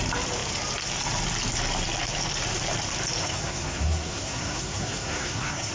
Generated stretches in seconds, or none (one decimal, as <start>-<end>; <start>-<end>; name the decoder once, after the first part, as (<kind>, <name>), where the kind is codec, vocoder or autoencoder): 3.2-5.7 (codec, SNAC)